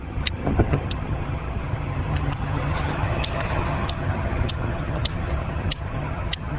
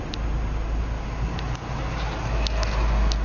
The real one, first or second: second